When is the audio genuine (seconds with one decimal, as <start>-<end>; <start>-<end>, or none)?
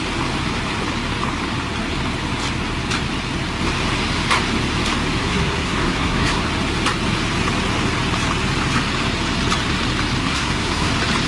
0.0-5.2; 6.5-10.2; 10.9-11.3